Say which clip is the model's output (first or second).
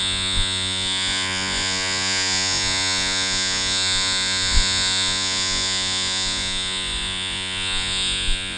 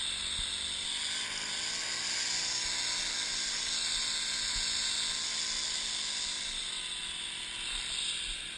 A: first